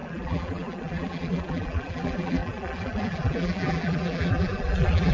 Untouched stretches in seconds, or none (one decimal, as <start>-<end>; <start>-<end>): none